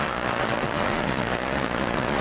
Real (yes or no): no